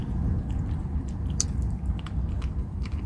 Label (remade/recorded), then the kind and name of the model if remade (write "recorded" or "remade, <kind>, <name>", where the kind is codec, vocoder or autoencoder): remade, vocoder, BigVGAN v2